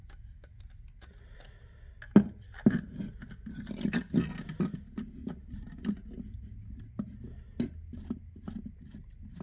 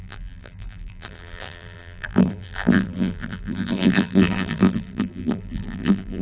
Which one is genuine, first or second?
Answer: first